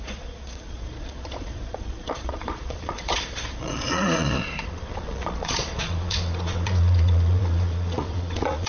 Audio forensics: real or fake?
fake